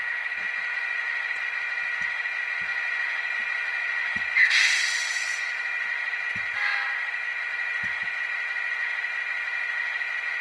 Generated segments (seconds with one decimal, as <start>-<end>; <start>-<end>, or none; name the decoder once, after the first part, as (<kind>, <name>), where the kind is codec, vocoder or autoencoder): 0.7-1.6 (vocoder, Vocos); 2.7-4.4